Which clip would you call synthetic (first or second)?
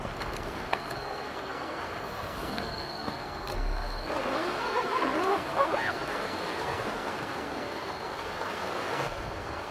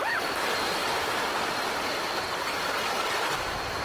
first